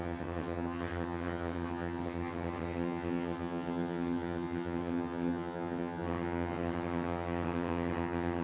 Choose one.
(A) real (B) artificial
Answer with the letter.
B